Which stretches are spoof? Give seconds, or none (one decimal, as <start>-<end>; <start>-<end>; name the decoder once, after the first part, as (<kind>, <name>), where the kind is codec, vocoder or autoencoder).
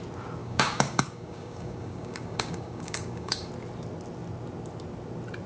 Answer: 0.4-3.5 (codec, DAC)